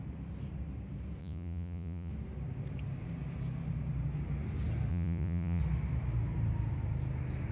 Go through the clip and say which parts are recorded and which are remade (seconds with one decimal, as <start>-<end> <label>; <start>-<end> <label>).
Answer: 0.0-1.2 recorded; 1.2-2.1 remade; 2.1-4.9 recorded; 4.9-5.6 remade; 5.6-7.5 recorded